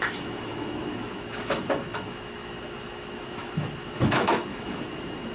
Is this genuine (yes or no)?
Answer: no